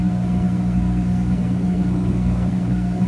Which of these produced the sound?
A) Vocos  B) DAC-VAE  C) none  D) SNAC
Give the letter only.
D